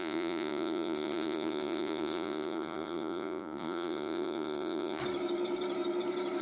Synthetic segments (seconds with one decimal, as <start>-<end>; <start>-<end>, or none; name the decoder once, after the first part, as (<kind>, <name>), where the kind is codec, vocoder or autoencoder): 0.0-5.0 (vocoder, Vocos)